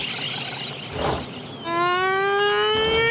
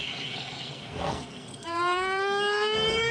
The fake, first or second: second